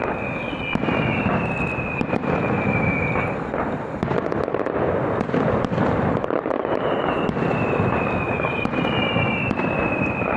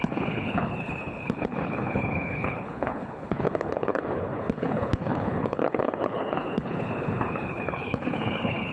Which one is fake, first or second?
second